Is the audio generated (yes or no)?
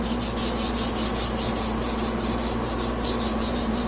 no